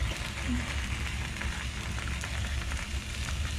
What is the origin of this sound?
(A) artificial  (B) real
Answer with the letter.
B